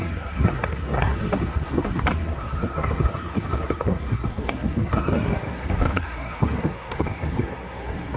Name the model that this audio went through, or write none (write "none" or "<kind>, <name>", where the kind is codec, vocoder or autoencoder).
codec, SNAC